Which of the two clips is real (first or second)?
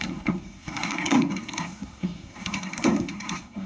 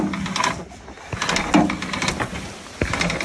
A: second